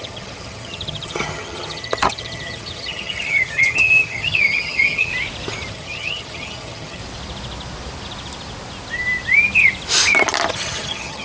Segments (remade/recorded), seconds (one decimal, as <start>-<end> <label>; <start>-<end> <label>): 0.0-5.1 remade; 5.1-5.7 recorded; 5.7-7.0 remade; 7.0-10.5 recorded; 10.5-11.2 remade